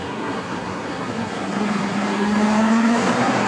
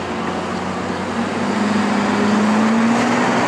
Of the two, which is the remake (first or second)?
first